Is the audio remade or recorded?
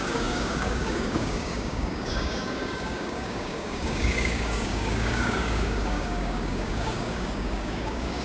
remade